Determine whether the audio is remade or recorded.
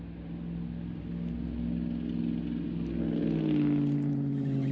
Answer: recorded